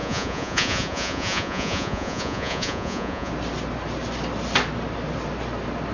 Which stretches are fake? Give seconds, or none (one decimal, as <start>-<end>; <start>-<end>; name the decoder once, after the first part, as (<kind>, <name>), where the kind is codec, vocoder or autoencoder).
0.0-3.3 (vocoder, Vocos)